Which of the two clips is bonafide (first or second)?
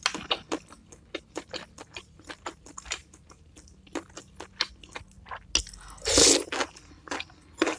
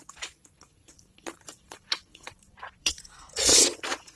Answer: first